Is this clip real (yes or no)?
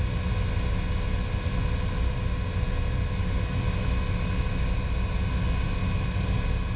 yes